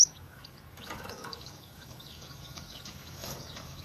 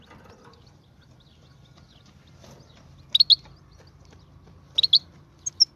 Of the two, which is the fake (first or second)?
first